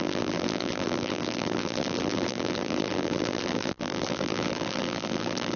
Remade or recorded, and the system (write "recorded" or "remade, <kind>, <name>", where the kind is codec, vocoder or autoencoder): remade, vocoder, BigVGAN v2